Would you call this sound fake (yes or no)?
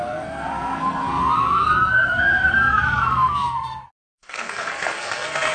yes